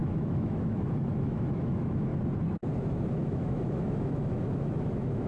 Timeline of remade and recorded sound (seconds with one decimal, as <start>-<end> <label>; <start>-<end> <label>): 0.0-2.1 remade; 2.1-3.1 recorded; 3.1-5.3 remade